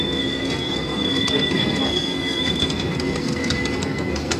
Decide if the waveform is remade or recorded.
remade